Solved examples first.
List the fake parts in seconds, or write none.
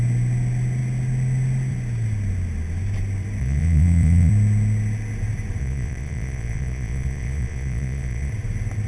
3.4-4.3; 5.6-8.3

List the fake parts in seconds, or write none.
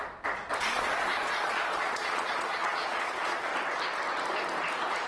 0.6-3.5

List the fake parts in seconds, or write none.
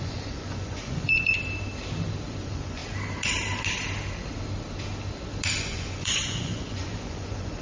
0.0-1.4; 2.3-2.8; 5.6-7.6